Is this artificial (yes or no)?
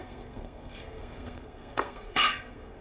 yes